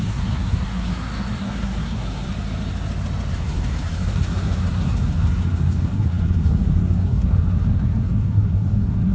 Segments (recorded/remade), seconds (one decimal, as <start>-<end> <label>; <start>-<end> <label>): 0.0-2.3 remade; 2.3-3.3 recorded; 3.3-9.1 remade